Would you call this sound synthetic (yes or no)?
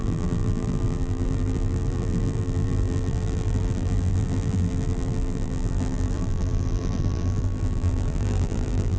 yes